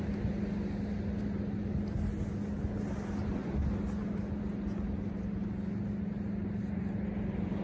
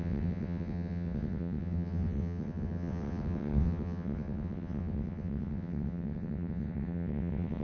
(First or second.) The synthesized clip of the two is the second